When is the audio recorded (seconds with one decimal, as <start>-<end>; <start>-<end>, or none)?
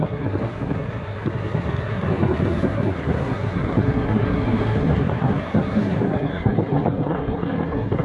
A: none